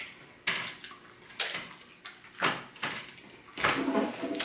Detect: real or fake real